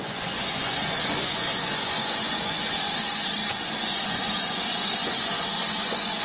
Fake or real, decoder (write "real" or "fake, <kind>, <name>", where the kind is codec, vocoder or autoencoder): fake, vocoder, Vocos